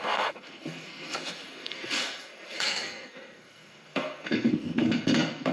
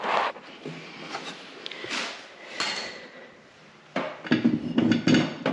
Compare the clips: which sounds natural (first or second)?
second